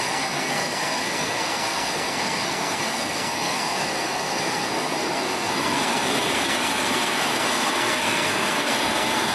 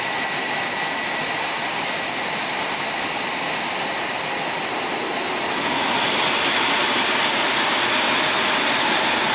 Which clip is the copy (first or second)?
first